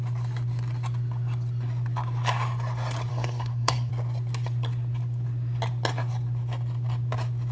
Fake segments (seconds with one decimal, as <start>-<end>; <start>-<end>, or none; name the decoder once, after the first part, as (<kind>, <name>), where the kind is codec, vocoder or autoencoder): 3.1-3.9 (codec, SNAC)